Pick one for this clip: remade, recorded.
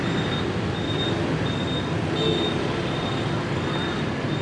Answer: recorded